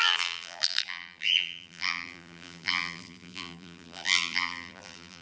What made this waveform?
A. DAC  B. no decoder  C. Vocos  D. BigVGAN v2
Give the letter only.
D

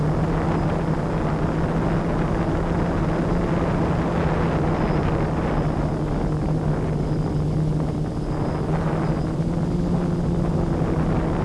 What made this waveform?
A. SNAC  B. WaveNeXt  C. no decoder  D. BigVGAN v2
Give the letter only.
C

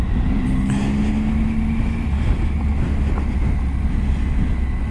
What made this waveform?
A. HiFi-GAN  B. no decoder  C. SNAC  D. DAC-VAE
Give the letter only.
B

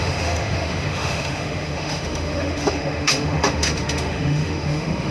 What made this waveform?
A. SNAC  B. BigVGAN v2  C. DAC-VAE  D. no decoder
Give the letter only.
C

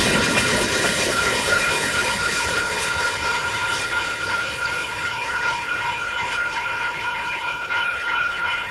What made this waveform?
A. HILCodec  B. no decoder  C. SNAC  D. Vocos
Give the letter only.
A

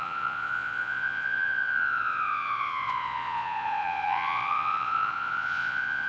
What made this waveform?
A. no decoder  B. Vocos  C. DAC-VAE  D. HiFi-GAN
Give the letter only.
B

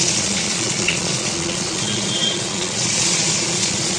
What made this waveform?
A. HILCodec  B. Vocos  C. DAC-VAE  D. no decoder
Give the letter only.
B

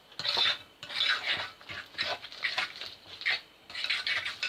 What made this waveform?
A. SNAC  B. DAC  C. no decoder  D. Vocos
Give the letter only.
C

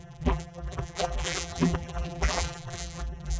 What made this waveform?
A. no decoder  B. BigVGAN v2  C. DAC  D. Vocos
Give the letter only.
B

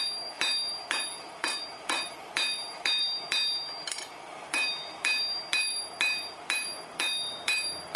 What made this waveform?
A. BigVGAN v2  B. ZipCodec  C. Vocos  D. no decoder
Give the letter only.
A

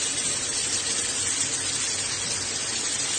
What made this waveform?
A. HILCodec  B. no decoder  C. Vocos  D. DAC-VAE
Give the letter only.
B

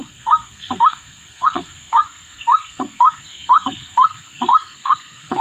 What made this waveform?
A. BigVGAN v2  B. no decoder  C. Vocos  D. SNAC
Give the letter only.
D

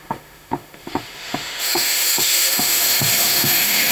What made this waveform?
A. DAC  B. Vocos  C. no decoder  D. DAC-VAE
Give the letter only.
D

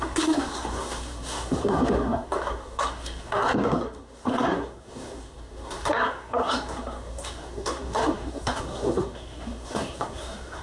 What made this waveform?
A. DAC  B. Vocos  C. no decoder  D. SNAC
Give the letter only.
D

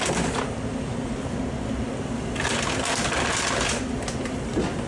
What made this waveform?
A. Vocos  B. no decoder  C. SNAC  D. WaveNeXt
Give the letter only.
B